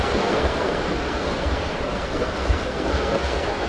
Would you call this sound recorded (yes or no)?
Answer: no